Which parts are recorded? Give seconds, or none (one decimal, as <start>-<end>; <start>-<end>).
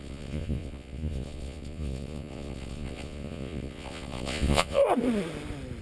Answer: 4.8-5.8